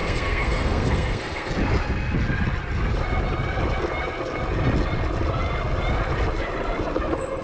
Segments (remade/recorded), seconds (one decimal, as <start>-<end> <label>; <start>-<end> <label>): 0.0-1.5 remade; 1.5-7.4 recorded